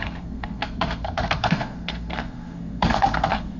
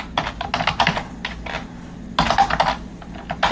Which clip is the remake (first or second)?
first